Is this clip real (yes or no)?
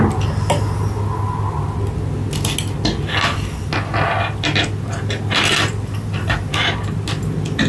yes